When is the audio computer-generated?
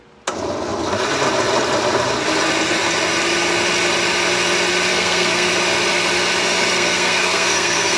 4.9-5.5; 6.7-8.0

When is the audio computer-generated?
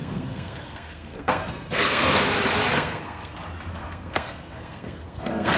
0.0-2.3; 2.7-3.3; 3.7-5.6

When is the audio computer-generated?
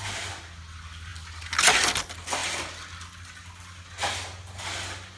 none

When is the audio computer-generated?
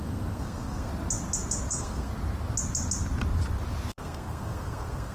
0.0-0.9; 1.7-2.1; 3.9-5.1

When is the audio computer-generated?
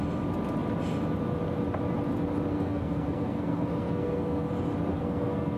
2.5-4.5; 4.9-5.6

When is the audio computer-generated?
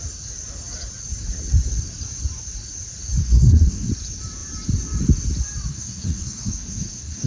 3.2-3.9; 5.7-7.3